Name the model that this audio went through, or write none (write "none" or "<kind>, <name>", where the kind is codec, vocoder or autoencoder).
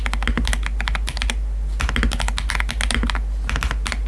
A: none